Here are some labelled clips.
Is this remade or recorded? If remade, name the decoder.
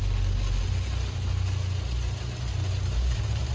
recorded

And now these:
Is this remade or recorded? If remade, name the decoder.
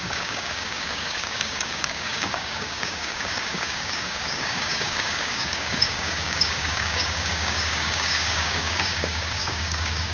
remade, codec, DAC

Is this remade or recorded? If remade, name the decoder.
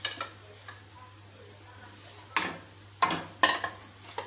recorded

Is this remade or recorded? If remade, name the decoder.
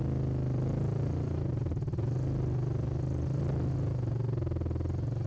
recorded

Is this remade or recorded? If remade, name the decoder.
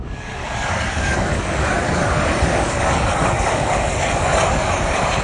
remade, codec, DAC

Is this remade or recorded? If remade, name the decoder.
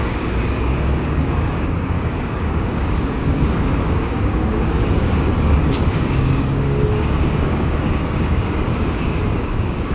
remade, codec, DAC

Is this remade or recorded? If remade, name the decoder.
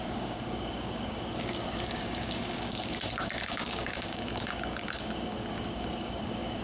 remade, codec, DAC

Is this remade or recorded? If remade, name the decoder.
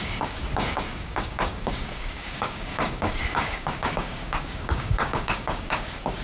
remade, codec, DAC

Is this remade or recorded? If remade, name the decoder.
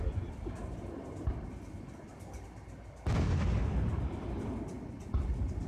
recorded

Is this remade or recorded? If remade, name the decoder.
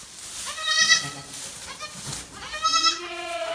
recorded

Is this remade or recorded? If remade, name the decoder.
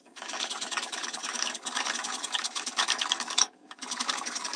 remade, codec, DAC